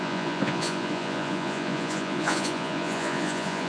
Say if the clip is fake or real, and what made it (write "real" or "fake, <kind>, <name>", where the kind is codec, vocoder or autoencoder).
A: fake, vocoder, Vocos